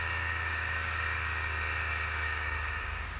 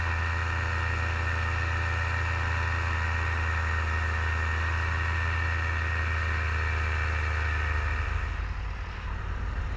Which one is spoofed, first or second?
first